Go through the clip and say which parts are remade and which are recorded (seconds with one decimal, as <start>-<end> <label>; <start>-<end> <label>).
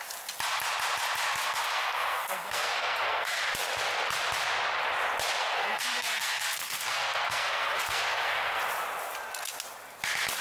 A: 0.0-1.3 recorded; 1.3-3.4 remade; 3.4-5.4 recorded; 5.4-8.6 remade; 8.6-10.4 recorded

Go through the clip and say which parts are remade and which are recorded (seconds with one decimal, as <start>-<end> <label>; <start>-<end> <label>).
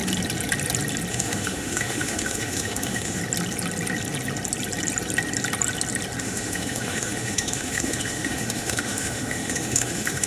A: 0.0-1.1 recorded; 1.1-3.2 remade; 3.2-6.2 recorded; 6.2-10.3 remade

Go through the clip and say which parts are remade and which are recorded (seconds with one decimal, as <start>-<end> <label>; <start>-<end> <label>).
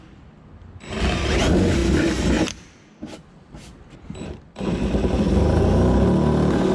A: 0.0-6.7 recorded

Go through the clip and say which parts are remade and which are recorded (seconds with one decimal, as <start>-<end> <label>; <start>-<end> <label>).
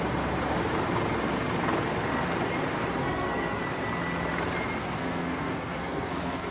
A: 0.0-3.0 recorded; 3.0-3.6 remade; 3.6-4.8 recorded; 4.8-6.5 remade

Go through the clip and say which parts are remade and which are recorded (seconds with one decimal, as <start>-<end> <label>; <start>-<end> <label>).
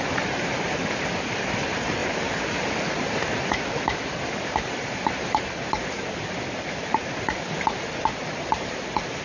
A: 0.0-9.2 remade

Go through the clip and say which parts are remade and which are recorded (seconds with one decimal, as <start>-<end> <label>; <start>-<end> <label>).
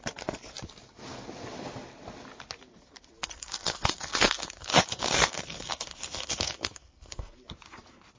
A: 0.0-3.2 recorded; 3.2-7.4 remade; 7.4-8.2 recorded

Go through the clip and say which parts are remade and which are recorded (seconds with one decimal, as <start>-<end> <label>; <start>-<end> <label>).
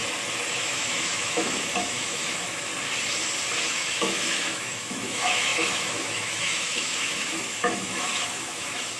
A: 0.0-0.5 recorded; 0.5-2.7 remade; 2.7-3.7 recorded; 3.7-9.0 remade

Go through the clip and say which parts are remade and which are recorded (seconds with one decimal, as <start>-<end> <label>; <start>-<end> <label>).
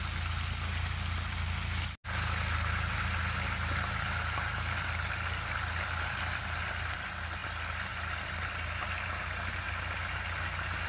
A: 0.0-10.9 recorded